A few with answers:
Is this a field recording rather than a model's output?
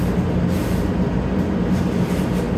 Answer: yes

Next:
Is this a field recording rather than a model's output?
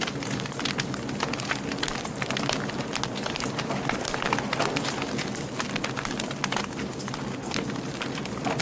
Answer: yes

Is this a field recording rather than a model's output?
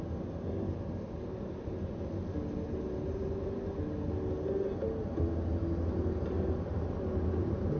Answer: yes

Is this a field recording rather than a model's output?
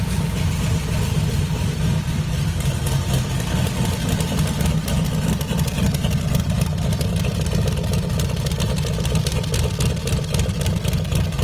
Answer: no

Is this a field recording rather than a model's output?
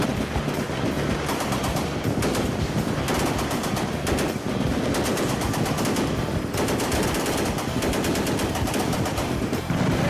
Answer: yes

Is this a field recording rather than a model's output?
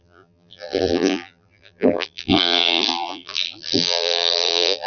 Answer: no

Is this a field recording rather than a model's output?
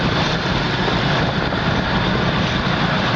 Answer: yes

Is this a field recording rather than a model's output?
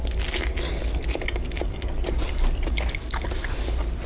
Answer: yes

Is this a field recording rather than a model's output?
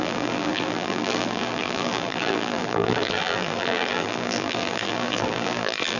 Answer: no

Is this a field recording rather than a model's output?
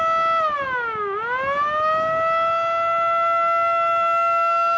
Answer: yes